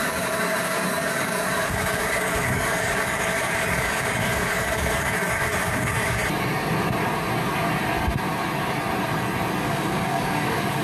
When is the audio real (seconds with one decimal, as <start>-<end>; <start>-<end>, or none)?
6.2-9.6